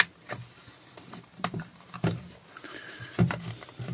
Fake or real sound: fake